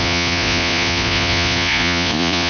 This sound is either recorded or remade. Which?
remade